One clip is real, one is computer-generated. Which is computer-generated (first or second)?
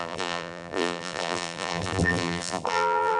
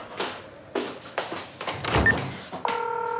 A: first